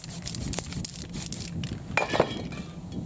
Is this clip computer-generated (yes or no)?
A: no